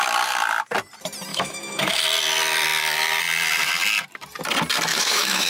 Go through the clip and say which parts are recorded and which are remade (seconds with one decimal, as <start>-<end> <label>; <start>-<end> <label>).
0.0-1.3 recorded; 1.3-2.0 remade; 2.0-4.9 recorded; 4.9-5.5 remade